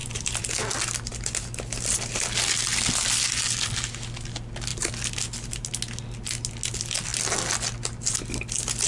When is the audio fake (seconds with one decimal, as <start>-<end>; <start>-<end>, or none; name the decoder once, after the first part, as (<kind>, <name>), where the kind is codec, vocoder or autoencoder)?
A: 0.0-0.5 (vocoder, BigVGAN v2)